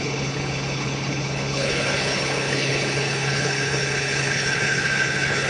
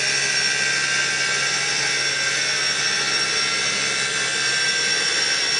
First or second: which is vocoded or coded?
first